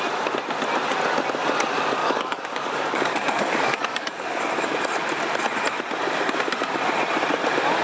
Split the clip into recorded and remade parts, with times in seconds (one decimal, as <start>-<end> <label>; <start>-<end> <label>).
0.0-2.0 recorded; 2.0-4.4 remade; 4.4-7.8 recorded

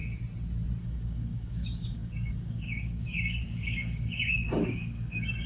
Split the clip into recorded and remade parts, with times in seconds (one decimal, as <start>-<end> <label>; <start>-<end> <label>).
0.0-0.8 recorded; 0.8-5.5 remade

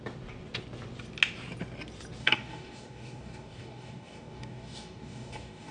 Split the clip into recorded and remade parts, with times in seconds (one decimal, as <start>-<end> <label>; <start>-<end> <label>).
0.0-2.2 recorded; 2.2-5.7 remade